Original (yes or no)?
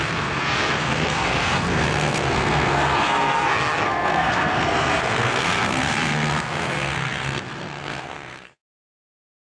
no